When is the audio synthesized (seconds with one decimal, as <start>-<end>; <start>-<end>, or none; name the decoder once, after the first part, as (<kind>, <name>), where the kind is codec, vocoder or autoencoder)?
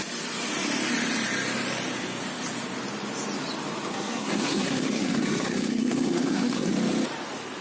3.9-6.7 (codec, SNAC)